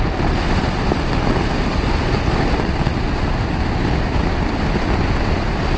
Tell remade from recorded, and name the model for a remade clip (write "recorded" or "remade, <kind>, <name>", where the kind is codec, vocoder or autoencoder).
recorded